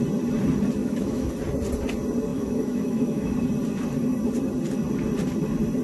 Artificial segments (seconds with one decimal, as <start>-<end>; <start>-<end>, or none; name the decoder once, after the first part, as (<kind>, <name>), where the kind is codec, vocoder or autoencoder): 0.8-1.3 (autoencoder, DAC-VAE); 2.3-3.3